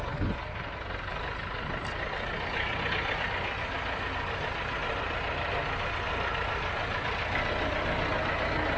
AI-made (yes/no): no